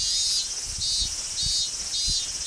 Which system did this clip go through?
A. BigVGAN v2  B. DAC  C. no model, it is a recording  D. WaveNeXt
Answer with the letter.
C